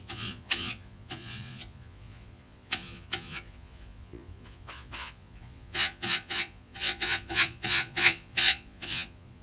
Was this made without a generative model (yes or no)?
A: no